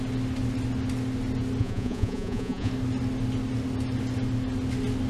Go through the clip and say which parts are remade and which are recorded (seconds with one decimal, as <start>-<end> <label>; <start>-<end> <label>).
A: 0.0-1.6 recorded; 1.6-2.7 remade; 2.7-5.1 recorded